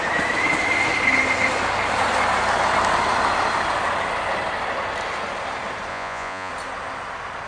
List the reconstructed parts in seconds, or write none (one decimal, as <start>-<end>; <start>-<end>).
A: 5.9-6.5